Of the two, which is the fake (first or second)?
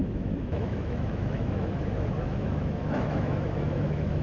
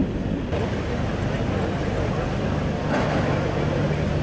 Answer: first